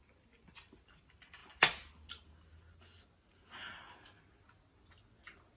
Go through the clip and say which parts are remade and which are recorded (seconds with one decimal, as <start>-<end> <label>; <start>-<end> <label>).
0.0-5.6 recorded